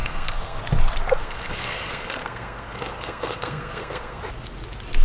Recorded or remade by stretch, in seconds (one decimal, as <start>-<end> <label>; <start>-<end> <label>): 0.0-0.6 remade; 0.6-1.2 recorded; 1.2-4.2 remade; 4.2-5.0 recorded